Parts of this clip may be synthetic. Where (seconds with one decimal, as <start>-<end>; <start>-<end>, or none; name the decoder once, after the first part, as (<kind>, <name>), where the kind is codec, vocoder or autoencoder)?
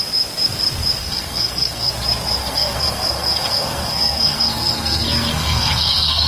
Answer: 1.0-1.9 (codec, SNAC); 2.4-6.3